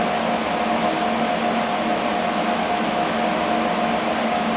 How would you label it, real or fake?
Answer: real